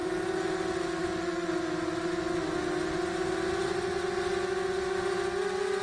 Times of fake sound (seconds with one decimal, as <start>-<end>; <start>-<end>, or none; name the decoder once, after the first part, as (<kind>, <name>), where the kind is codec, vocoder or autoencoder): none